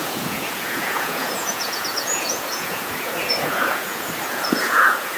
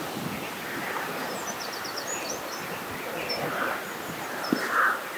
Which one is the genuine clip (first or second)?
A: second